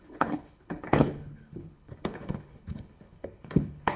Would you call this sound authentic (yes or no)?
no